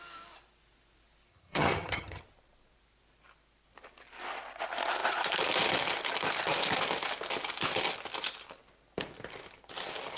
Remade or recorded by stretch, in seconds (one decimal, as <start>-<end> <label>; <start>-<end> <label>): 0.0-1.3 recorded; 1.3-2.2 remade; 2.2-10.2 recorded